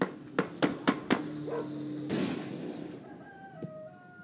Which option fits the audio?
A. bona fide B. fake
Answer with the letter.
A